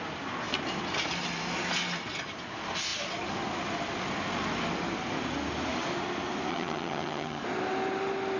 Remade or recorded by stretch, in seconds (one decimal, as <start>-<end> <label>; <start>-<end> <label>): 0.0-6.5 recorded; 6.5-7.4 remade; 7.4-8.4 recorded